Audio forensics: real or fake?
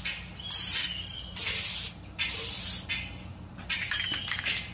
real